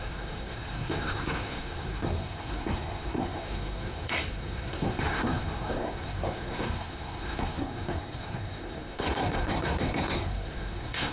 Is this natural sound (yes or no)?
no